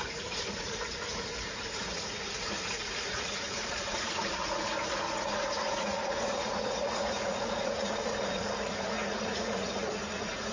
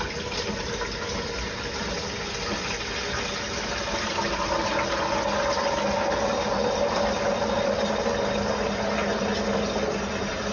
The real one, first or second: second